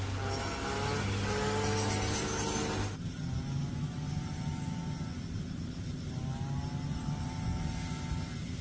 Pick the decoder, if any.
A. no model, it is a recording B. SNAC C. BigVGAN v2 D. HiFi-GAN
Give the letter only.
A